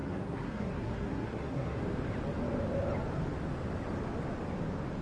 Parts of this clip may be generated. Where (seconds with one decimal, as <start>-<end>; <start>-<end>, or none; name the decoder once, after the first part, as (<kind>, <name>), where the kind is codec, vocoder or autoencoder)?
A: 0.0-1.8 (codec, SNAC)